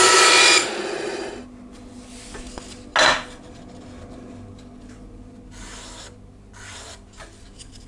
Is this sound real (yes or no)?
yes